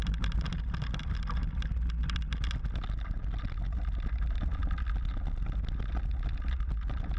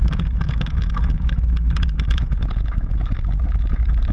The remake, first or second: second